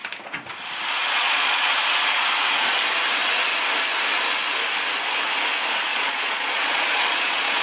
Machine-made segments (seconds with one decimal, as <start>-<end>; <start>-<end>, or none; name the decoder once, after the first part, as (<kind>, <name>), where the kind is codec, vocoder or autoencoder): 1.0-1.8 (vocoder, Vocos); 5.9-7.6